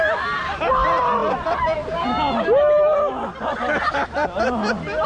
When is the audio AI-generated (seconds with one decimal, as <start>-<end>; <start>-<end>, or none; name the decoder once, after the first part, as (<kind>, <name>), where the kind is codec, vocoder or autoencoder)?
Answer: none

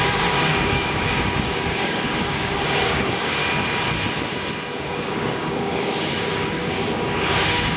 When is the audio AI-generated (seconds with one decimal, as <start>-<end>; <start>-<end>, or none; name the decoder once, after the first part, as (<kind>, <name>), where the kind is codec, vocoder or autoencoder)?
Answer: 0.0-3.4 (codec, DAC); 4.8-7.8

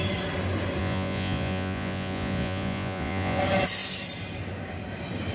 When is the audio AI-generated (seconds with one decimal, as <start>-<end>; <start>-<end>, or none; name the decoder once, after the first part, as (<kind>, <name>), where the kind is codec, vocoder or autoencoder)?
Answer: 0.8-3.4 (vocoder, Vocos)

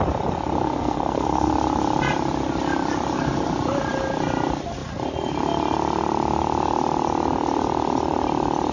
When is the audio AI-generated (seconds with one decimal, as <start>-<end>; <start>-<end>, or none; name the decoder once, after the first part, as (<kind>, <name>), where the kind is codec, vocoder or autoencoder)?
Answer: 0.6-1.5 (codec, SNAC)

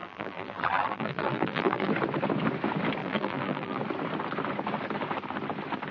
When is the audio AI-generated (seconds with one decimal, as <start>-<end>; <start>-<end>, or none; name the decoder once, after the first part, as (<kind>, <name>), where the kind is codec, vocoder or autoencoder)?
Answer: 0.0-1.9 (vocoder, BigVGAN v2); 3.0-3.8

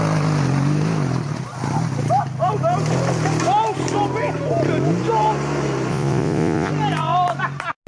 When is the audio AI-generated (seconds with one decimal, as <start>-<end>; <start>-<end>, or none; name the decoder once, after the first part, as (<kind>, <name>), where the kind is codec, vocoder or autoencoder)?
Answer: 5.9-6.7 (vocoder, Vocos)

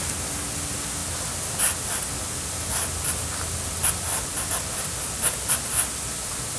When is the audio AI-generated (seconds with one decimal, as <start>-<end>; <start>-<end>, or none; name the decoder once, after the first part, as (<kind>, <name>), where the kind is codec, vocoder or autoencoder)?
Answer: none